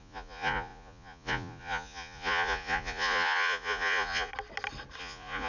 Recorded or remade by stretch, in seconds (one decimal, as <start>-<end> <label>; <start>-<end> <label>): 0.0-4.3 remade; 4.3-5.0 recorded; 5.0-5.5 remade